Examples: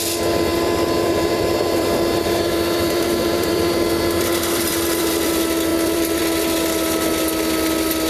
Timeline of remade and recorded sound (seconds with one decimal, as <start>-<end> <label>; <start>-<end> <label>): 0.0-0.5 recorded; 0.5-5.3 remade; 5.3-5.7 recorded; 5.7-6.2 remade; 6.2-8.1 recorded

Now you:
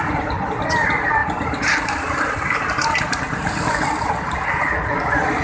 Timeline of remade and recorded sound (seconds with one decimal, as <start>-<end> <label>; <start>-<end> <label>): 0.0-1.2 recorded; 1.2-4.1 remade; 4.1-5.4 recorded

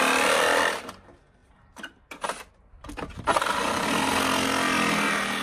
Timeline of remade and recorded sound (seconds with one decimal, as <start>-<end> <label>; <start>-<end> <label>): 0.0-5.4 recorded